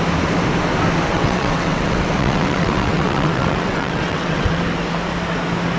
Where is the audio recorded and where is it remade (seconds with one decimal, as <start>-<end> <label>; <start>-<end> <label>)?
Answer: 0.0-1.1 recorded; 1.1-4.6 remade; 4.6-5.8 recorded